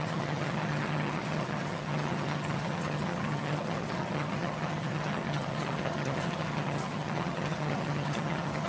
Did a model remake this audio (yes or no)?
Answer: yes